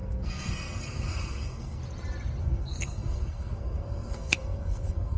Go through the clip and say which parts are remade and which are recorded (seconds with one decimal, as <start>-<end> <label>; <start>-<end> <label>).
0.0-1.8 remade; 1.8-2.4 recorded; 2.4-5.2 remade